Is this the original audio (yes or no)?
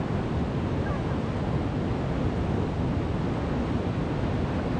yes